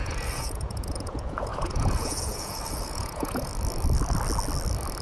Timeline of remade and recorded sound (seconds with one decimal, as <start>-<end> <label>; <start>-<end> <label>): 0.0-3.5 remade; 3.5-5.0 recorded